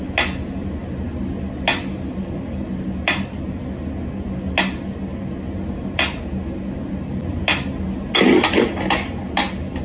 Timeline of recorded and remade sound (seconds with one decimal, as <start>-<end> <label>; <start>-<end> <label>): 0.0-9.8 recorded